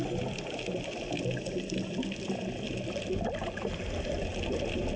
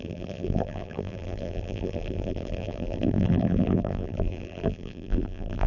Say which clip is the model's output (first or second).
second